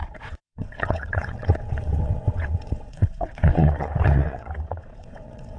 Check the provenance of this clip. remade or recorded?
remade